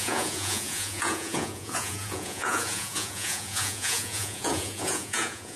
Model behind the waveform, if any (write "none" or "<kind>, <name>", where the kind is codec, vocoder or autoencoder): vocoder, Vocos